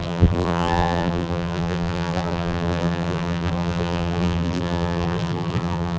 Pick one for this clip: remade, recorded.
remade